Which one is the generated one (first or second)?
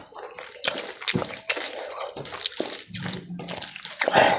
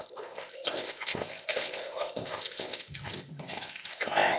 second